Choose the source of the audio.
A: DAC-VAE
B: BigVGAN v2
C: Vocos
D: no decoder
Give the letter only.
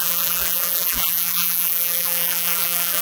B